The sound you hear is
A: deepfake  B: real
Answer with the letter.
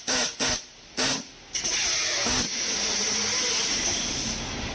B